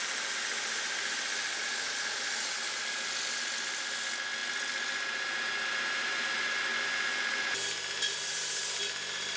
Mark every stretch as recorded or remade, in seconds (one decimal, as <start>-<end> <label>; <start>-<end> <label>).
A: 0.0-9.4 recorded